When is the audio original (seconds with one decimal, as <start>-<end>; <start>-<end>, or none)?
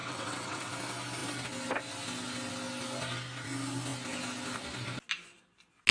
0.7-5.9